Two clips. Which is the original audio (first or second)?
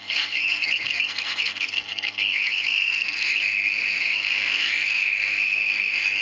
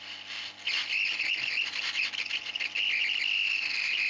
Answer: second